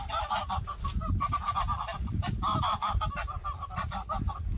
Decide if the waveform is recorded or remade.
recorded